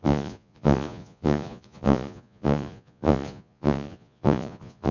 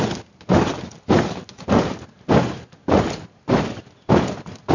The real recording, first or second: second